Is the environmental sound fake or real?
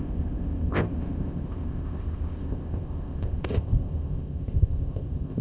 fake